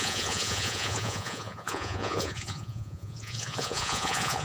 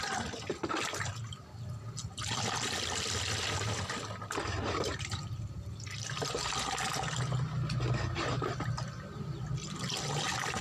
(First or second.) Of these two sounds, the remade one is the first